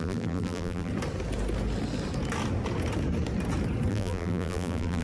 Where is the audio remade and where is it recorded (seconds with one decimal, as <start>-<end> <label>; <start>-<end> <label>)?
0.0-0.9 remade; 0.9-3.9 recorded; 3.9-5.0 remade